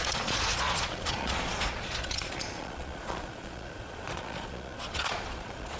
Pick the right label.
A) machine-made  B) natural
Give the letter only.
A